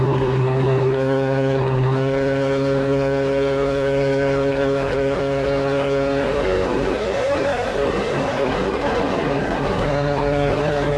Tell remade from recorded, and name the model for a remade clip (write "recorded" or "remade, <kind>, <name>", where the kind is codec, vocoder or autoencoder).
remade, codec, SNAC